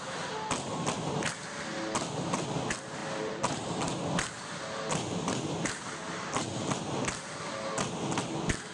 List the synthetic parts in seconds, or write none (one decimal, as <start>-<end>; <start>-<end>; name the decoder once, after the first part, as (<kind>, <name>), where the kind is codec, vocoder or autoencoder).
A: none